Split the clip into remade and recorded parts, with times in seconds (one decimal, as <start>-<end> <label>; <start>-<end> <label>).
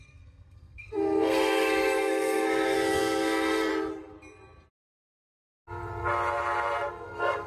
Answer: 0.0-3.7 remade; 3.7-6.9 recorded; 6.9-7.5 remade